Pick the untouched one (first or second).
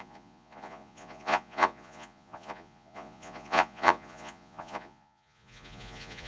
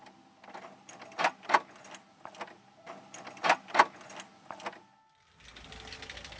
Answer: second